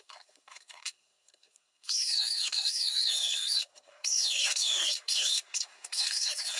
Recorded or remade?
remade